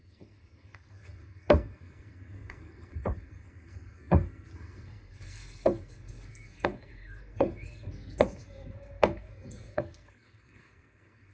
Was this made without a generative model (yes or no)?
no